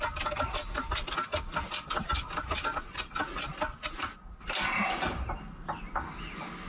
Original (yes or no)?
yes